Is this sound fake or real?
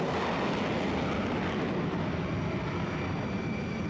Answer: real